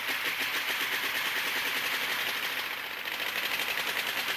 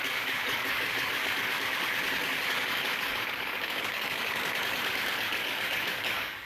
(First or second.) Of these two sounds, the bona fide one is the first